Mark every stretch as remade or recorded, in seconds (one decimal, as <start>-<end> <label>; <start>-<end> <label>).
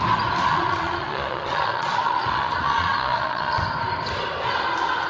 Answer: 0.0-0.5 recorded; 0.5-3.6 remade; 3.6-5.1 recorded